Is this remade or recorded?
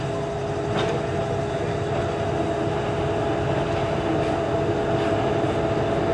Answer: recorded